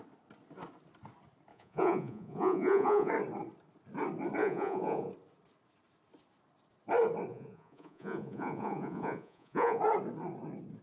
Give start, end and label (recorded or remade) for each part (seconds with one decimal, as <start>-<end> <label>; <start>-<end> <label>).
0.0-1.5 recorded; 1.5-3.1 remade; 3.1-4.4 recorded; 4.4-5.1 remade; 5.1-7.3 recorded; 7.3-9.8 remade; 9.8-10.8 recorded